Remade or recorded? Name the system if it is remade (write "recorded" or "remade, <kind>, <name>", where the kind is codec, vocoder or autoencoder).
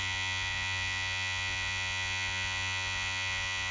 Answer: remade, vocoder, Vocos